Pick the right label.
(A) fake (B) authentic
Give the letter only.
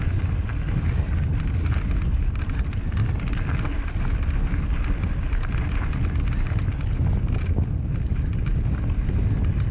B